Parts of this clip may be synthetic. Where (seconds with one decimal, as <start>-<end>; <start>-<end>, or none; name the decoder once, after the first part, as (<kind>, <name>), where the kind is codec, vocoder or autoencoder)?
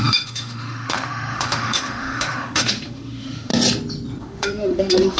0.0-3.5 (autoencoder, DAC-VAE); 4.2-5.2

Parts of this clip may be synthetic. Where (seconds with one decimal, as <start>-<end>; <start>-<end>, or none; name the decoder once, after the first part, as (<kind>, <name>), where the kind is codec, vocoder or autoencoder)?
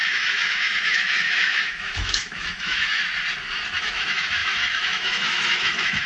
0.0-3.0 (autoencoder, DAC-VAE); 3.8-6.1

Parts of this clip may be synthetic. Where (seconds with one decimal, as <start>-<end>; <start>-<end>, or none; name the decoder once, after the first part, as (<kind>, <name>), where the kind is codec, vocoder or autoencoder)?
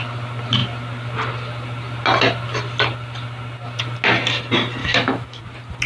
4.8-5.4 (autoencoder, DAC-VAE)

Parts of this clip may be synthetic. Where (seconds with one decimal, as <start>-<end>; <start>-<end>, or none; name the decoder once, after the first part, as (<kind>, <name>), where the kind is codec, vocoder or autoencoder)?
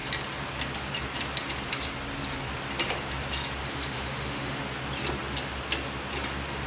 3.6-4.6 (autoencoder, DAC-VAE)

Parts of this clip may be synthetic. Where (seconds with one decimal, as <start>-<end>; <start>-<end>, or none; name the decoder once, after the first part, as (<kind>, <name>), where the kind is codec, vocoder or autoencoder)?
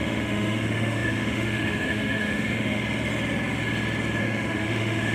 0.0-2.8 (autoencoder, DAC-VAE); 4.2-5.1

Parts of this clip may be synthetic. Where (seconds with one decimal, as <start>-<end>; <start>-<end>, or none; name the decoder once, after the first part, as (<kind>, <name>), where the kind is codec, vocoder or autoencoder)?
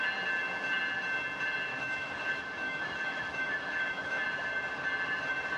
1.7-4.2 (autoencoder, DAC-VAE)